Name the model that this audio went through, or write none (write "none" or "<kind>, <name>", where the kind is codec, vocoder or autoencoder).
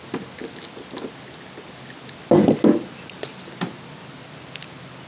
none